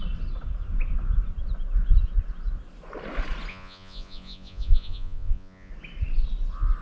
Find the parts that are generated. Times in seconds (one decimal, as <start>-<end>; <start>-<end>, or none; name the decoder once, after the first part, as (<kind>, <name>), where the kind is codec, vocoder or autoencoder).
3.5-5.7 (vocoder, Vocos)